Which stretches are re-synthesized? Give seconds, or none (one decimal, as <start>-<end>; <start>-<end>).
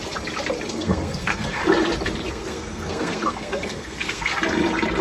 0.7-1.6; 2.3-4.3